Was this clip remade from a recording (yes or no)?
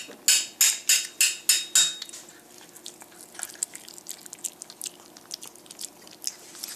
no